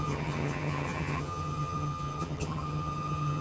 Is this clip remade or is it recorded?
remade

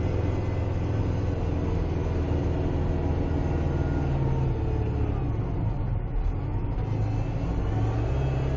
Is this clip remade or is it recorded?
recorded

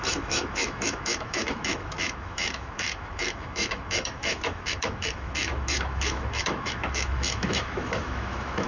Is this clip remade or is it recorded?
remade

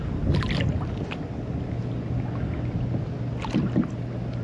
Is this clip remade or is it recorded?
recorded